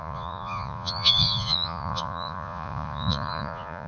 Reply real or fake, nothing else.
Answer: fake